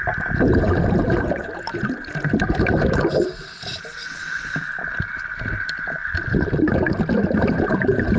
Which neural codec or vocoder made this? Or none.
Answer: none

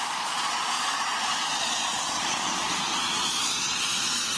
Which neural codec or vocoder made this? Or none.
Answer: vocoder, Vocos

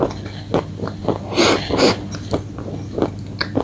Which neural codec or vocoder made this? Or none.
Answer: none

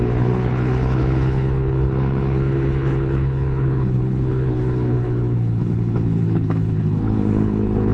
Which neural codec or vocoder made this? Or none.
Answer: codec, HILCodec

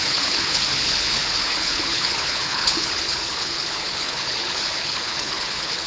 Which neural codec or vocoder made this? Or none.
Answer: codec, HILCodec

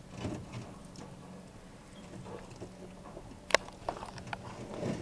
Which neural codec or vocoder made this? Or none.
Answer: none